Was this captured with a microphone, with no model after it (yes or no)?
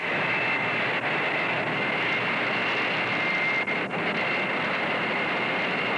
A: yes